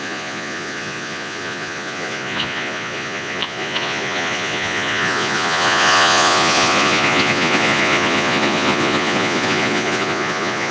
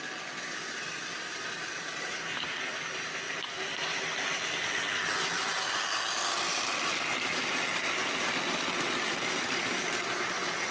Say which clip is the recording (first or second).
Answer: second